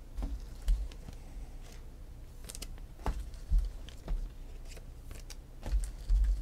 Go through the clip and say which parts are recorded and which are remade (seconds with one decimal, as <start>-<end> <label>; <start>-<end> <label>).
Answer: 0.0-2.4 recorded; 2.4-4.0 remade; 4.0-6.4 recorded